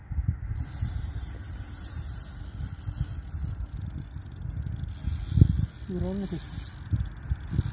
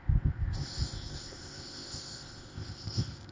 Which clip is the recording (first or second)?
first